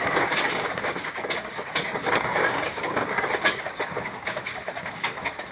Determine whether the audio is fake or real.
fake